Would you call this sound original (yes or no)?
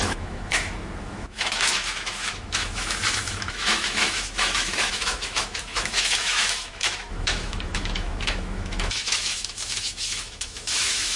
no